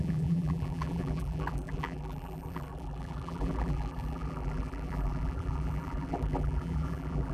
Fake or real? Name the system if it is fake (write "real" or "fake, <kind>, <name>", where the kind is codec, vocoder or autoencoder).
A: fake, vocoder, BigVGAN v2